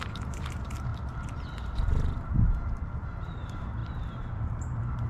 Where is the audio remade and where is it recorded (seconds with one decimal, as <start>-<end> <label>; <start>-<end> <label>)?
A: 0.0-0.9 remade; 0.9-3.0 recorded; 3.0-5.1 remade